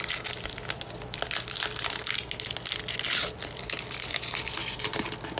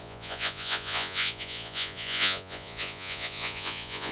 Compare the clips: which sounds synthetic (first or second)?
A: second